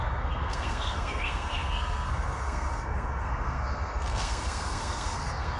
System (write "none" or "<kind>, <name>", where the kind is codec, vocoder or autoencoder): codec, SNAC